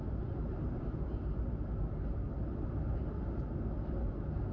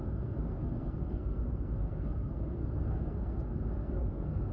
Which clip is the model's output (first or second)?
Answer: second